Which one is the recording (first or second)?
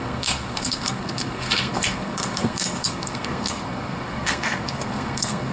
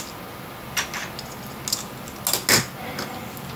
second